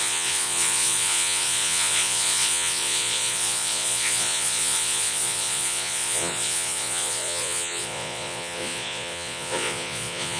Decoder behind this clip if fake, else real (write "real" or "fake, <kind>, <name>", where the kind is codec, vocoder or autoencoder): fake, vocoder, Vocos